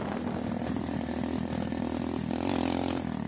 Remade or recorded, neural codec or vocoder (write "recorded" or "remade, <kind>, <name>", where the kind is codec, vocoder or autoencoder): recorded